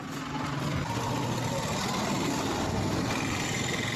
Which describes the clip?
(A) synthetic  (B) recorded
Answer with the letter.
B